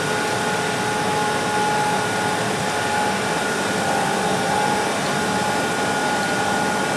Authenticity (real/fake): real